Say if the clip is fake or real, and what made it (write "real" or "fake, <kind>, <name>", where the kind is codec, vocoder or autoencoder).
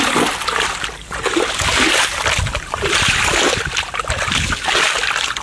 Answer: real